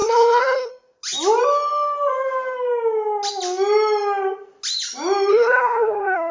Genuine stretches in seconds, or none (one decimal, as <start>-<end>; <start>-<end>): 0.7-5.3